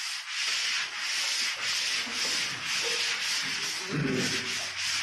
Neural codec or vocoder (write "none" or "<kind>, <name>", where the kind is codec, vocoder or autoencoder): none